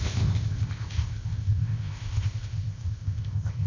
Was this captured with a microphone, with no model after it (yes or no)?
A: no